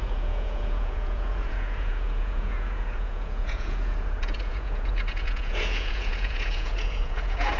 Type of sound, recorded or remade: remade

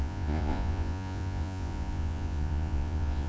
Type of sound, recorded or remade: remade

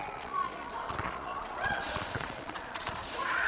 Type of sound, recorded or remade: remade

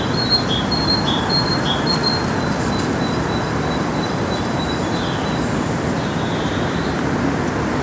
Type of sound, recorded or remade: recorded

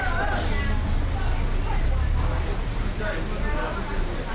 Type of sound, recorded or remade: recorded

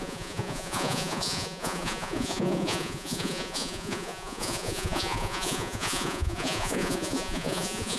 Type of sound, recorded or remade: remade